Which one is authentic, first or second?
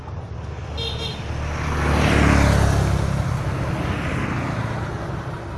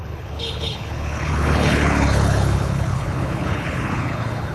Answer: first